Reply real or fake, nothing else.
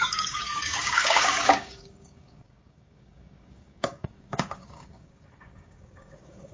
fake